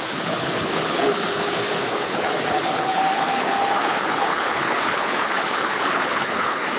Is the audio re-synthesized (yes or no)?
yes